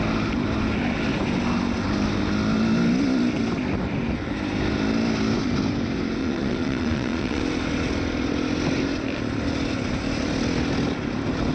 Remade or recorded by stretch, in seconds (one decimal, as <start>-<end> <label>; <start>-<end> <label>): 0.0-6.2 recorded; 6.2-7.4 remade; 7.4-11.5 recorded